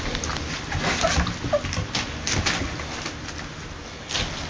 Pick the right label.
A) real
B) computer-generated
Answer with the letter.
A